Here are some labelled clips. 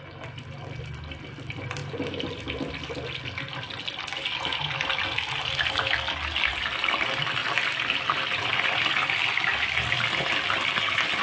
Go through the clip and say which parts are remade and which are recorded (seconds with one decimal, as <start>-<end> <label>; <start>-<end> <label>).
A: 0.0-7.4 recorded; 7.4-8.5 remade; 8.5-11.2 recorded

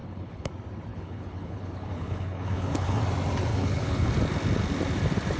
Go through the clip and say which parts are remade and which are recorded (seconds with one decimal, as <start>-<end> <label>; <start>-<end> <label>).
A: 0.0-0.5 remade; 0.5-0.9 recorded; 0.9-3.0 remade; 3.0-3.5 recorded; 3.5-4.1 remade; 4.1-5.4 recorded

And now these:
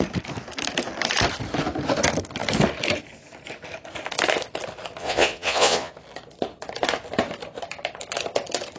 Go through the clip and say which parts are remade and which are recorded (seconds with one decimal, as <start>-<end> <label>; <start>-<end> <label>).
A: 0.0-5.0 recorded; 5.0-5.9 remade; 5.9-8.8 recorded

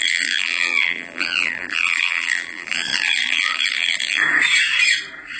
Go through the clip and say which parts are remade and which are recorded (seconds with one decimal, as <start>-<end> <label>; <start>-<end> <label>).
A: 0.0-4.2 remade; 4.2-5.4 recorded

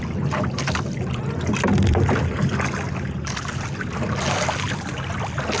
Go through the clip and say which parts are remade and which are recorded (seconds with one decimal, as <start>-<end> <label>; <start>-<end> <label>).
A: 0.0-5.6 recorded